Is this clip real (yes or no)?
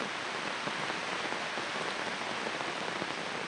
yes